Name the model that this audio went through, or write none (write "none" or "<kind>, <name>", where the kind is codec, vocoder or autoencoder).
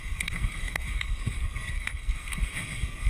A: codec, SNAC